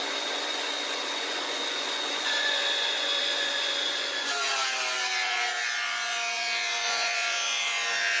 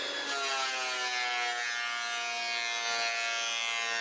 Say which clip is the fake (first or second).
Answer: first